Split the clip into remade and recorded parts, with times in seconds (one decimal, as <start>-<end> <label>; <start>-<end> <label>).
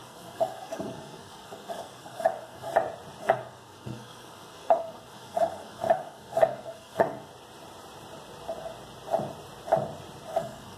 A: 0.0-2.7 remade; 2.7-3.2 recorded; 3.2-7.3 remade; 7.3-10.3 recorded; 10.3-10.8 remade